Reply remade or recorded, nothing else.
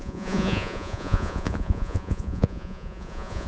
remade